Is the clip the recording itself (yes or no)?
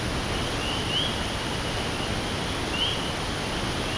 yes